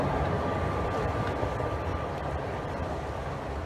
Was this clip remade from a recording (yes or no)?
no